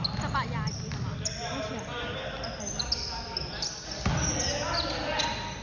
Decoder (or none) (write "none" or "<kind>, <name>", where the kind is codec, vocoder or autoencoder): none